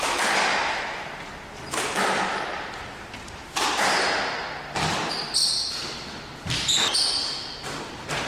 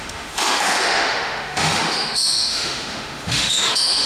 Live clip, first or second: first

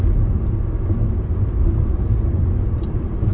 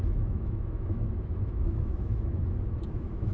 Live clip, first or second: first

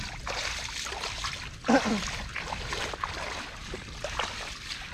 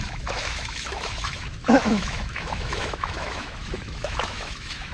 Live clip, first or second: first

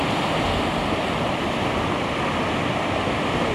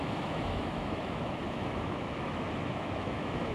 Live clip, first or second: first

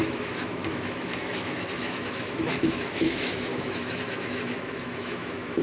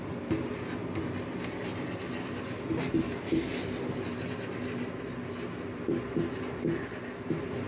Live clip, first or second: second